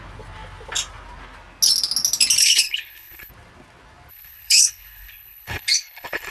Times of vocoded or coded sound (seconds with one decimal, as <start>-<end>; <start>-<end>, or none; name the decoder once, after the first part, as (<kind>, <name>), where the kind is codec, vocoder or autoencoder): 2.4-3.3 (codec, HILCodec); 4.1-6.3